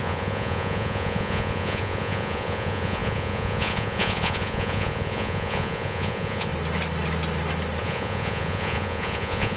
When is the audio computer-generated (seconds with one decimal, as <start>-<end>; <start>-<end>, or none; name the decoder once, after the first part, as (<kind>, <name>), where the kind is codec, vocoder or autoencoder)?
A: 0.0-6.5 (vocoder, Vocos); 7.8-9.6